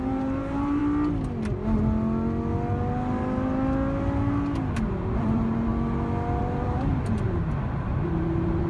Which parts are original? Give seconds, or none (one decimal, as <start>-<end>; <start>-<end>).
0.8-5.2; 5.7-6.4